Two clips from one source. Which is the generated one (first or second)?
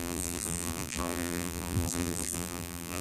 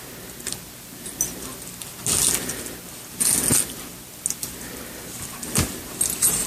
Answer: first